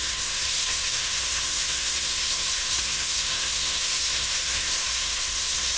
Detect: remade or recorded remade